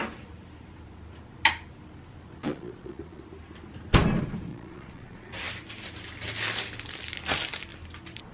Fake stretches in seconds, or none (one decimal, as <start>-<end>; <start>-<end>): 2.4-3.2; 4.5-5.4